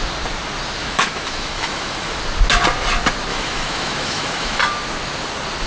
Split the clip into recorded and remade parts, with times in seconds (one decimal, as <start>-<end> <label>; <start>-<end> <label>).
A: 0.0-0.8 recorded; 0.8-2.2 remade; 2.2-3.3 recorded; 3.3-4.6 remade; 4.6-5.7 recorded